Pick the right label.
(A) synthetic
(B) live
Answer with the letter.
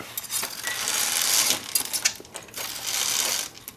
B